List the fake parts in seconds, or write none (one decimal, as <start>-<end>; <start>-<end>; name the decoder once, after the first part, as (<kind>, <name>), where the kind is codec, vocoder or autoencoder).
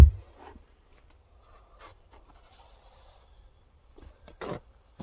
1.9-5.0 (vocoder, BigVGAN v2)